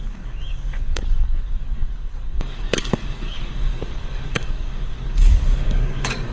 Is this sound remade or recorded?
remade